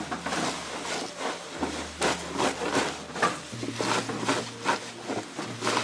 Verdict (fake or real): real